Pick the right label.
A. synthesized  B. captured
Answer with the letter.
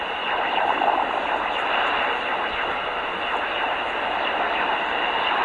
B